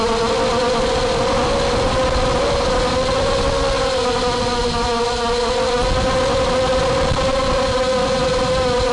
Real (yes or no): yes